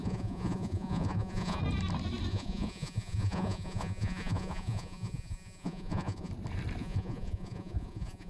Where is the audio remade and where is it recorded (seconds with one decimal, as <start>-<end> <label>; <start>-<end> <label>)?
0.0-1.6 remade; 1.6-2.3 recorded; 2.3-6.3 remade; 6.3-6.8 recorded; 6.8-8.3 remade